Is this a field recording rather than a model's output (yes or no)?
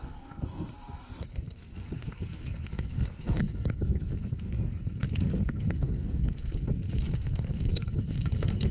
no